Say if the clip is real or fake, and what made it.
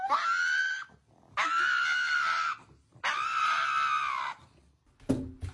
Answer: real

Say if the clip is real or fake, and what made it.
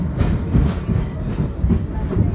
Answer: real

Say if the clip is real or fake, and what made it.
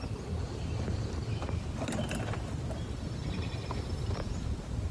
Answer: real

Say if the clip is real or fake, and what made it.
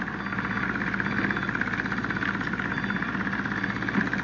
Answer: real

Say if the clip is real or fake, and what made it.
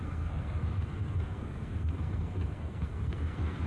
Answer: fake, codec, SNAC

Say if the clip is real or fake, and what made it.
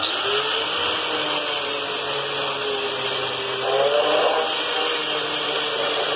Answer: real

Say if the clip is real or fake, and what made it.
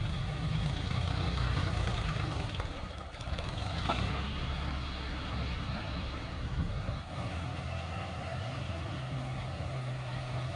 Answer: fake, codec, SNAC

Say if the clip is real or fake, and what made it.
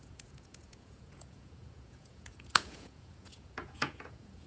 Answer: fake, vocoder, Vocos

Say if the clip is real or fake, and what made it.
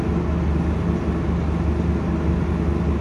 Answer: real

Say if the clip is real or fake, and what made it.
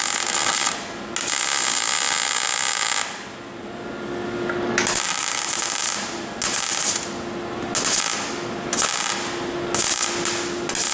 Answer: real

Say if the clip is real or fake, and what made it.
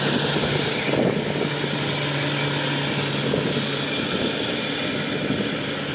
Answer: real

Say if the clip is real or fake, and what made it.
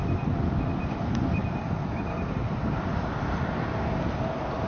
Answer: real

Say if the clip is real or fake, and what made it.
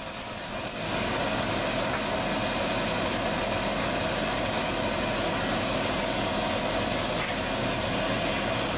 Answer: real